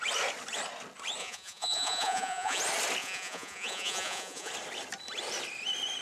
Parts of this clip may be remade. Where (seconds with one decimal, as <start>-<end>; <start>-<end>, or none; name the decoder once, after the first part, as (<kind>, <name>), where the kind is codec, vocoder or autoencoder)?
1.2-2.6 (vocoder, Vocos); 3.0-4.5